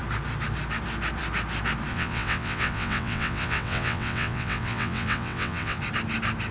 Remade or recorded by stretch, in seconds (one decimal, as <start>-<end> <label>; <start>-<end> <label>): 0.0-1.9 recorded; 1.9-5.8 remade; 5.8-6.5 recorded